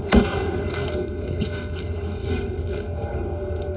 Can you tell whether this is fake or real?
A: fake